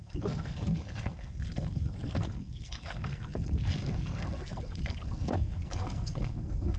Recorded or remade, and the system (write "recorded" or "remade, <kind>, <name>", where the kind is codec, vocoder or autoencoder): remade, codec, SNAC